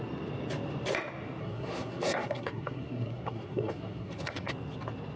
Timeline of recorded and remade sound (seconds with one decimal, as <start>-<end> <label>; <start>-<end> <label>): 0.0-1.4 recorded; 1.4-4.5 remade; 4.5-5.2 recorded